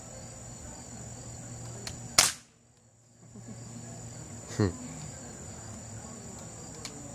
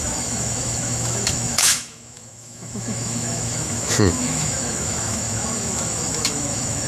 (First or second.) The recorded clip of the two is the first